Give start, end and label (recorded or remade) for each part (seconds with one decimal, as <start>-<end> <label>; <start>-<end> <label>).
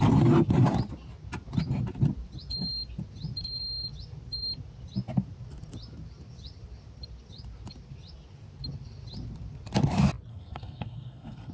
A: 0.0-10.3 recorded; 10.3-11.5 remade